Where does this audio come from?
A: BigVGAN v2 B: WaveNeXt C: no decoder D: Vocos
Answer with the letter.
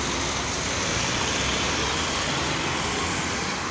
C